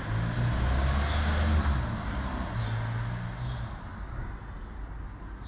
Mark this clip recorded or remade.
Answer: recorded